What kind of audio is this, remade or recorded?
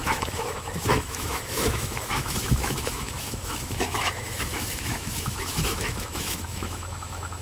remade